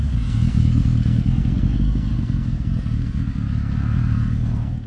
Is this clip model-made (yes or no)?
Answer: yes